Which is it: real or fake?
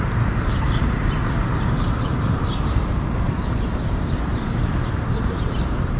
fake